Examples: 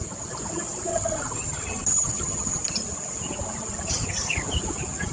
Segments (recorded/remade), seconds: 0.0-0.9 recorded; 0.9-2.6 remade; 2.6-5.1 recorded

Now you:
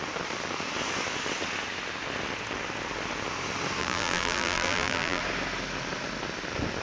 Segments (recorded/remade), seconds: 0.0-3.8 recorded; 3.8-5.2 remade; 5.2-6.8 recorded

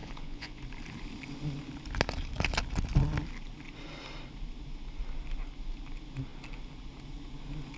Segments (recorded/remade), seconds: 0.0-0.6 remade; 0.6-7.8 recorded

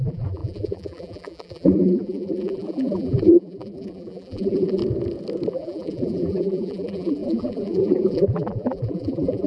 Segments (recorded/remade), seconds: 0.0-4.8 remade; 4.8-5.5 recorded; 5.5-9.5 remade

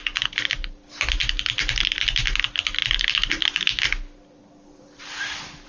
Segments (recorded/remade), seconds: 0.0-5.7 recorded

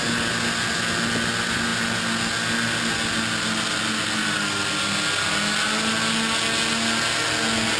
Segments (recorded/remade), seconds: 0.0-7.8 recorded

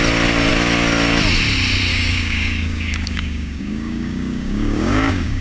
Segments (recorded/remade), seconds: 0.0-1.9 recorded; 1.9-5.4 remade